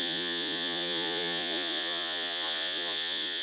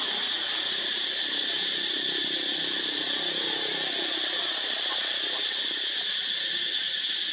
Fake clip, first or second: first